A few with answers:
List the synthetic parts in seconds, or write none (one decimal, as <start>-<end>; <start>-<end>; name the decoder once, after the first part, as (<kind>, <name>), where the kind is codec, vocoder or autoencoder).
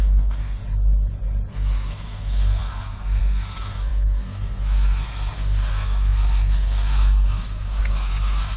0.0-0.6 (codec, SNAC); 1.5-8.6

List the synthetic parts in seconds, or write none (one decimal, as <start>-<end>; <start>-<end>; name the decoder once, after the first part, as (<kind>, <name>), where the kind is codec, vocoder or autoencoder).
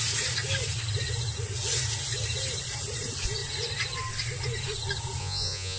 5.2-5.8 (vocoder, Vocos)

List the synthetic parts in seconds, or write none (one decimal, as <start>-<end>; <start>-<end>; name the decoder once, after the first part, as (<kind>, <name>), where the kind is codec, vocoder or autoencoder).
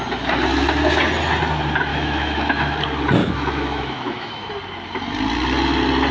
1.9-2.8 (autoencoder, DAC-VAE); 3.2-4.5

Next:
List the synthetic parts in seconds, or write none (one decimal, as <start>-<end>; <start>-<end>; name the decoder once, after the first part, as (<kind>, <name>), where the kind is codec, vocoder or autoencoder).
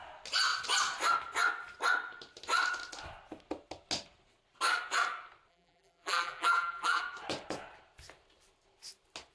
5.5-7.0 (vocoder, BigVGAN v2)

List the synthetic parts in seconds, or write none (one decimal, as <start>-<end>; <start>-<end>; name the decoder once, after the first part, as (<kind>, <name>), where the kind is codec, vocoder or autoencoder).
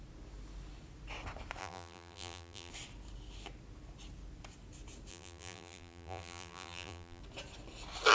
1.6-2.7 (vocoder, BigVGAN v2); 5.1-7.2